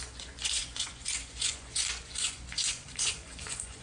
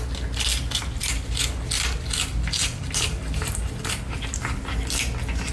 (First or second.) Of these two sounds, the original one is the second